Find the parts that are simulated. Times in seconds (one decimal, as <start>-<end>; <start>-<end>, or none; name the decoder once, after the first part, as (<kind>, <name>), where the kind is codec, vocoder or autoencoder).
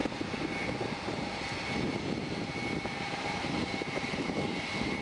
3.0-5.0 (vocoder, BigVGAN v2)